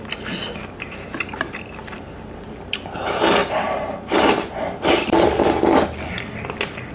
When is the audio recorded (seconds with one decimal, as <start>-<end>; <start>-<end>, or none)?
0.0-6.9